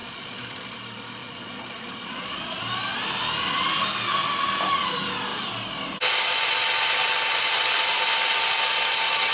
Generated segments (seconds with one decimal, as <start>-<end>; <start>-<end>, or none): 0.0-0.7; 1.2-2.6